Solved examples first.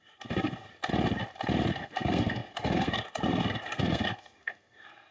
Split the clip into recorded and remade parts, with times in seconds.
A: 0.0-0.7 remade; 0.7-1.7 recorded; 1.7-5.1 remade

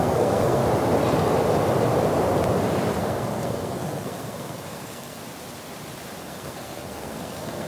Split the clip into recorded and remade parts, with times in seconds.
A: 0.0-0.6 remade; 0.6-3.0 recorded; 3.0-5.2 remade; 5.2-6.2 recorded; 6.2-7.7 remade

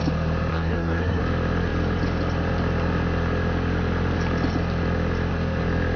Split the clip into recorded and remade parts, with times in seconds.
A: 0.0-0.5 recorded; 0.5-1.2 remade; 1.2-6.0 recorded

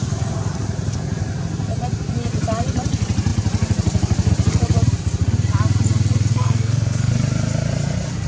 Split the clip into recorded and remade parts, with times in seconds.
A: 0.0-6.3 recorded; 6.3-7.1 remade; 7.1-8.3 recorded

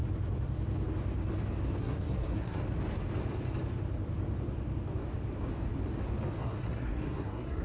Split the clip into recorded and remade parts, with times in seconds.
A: 0.0-1.8 recorded; 1.8-2.6 remade; 2.6-6.4 recorded; 6.4-7.6 remade

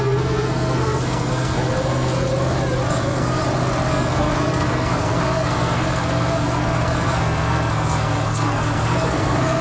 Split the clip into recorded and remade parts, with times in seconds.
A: 0.0-2.3 remade; 2.3-2.9 recorded; 2.9-3.4 remade; 3.4-3.9 recorded; 3.9-9.6 remade

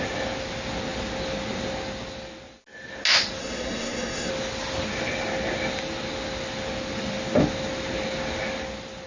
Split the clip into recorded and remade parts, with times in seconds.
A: 0.0-3.4 recorded; 3.4-4.3 remade; 4.3-9.1 recorded